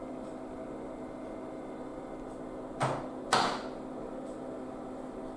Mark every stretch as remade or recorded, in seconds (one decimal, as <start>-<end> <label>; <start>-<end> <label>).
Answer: 0.0-5.4 recorded